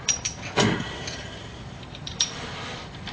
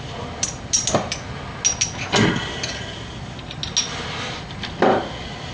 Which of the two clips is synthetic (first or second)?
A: first